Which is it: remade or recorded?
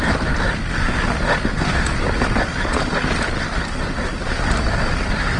recorded